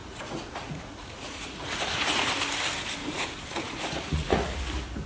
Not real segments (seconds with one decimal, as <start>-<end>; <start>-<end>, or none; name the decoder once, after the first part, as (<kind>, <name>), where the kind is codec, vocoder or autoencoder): 0.0-2.3 (vocoder, Vocos); 3.0-4.6